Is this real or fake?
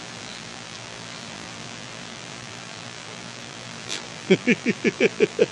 fake